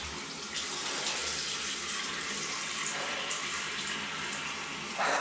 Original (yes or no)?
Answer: no